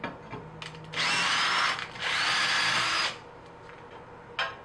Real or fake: real